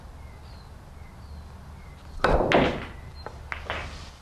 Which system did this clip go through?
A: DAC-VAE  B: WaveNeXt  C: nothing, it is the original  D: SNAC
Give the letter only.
C